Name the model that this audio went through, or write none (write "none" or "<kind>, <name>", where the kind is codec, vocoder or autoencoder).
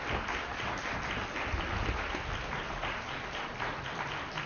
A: none